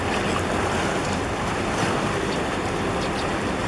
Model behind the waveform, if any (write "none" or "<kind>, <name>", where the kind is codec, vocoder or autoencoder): none